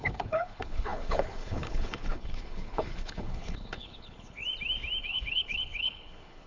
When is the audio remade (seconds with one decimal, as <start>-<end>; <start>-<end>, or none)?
0.0-4.4; 5.0-6.5